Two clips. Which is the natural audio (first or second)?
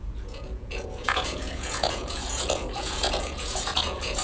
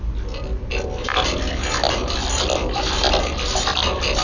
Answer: second